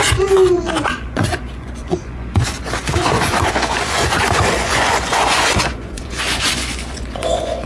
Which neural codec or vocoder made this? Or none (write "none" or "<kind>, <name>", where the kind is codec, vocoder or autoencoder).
vocoder, Vocos